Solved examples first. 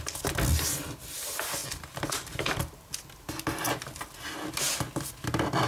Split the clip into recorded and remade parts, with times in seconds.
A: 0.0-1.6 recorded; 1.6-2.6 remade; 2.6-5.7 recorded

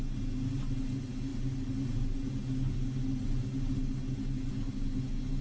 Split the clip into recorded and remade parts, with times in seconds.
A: 0.0-5.4 recorded

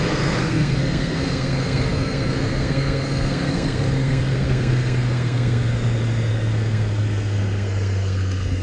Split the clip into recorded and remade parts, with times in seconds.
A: 0.0-5.7 remade; 5.7-6.3 recorded; 6.3-8.6 remade

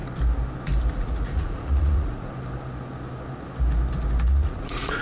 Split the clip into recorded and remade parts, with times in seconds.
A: 0.0-0.9 recorded; 0.9-2.3 remade; 2.3-4.3 recorded; 4.3-5.0 remade

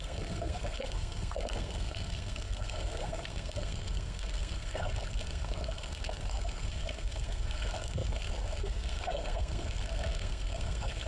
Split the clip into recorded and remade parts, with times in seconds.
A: 0.0-11.1 remade